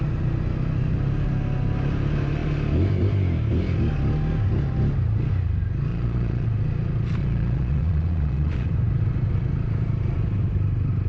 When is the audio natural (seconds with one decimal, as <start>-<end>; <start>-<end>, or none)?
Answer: 0.0-5.9; 6.5-7.2; 8.7-11.1